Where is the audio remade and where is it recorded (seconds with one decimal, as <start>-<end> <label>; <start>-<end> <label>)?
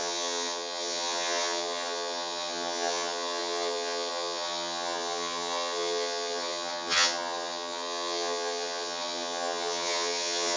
0.0-10.6 remade